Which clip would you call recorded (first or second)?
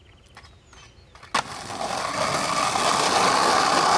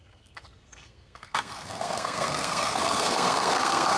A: first